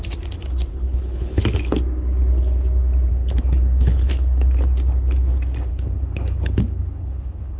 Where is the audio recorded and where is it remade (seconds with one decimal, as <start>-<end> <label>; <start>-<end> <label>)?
0.0-0.7 recorded; 0.7-1.4 remade; 1.4-3.1 recorded; 3.1-4.1 remade; 4.1-5.7 recorded; 5.7-7.6 remade